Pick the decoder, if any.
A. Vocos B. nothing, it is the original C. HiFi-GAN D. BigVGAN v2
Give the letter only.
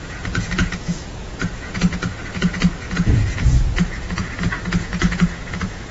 A